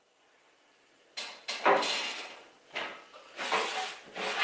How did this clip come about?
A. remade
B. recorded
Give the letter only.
B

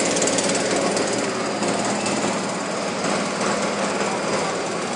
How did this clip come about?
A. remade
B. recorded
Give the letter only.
B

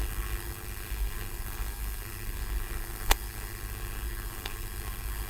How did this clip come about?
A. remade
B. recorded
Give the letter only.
A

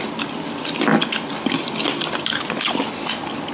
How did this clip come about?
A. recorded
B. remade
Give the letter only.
A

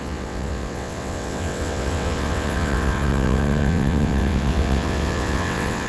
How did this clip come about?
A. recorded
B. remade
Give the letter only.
B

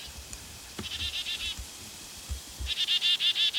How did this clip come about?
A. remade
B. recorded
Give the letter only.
B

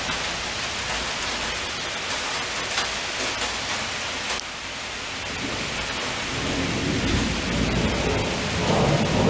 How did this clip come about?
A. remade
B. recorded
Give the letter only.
B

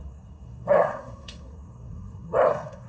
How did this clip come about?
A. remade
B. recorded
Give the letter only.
A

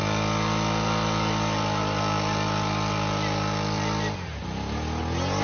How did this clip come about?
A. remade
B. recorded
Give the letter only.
B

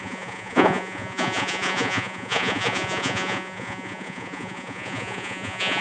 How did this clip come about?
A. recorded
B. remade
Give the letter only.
B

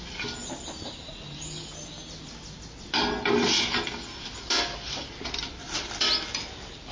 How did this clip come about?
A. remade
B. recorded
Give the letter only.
B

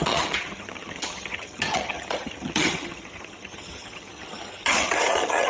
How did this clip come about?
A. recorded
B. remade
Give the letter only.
B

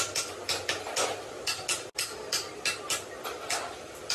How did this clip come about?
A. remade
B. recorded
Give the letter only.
B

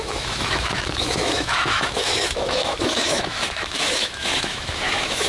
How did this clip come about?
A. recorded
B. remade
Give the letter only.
B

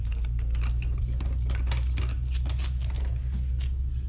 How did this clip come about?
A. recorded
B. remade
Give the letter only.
A